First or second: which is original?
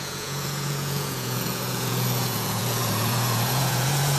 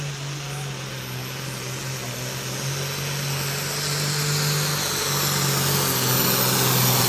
second